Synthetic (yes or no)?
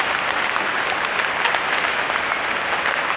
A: no